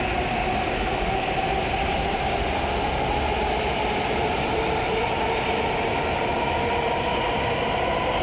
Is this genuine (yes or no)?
yes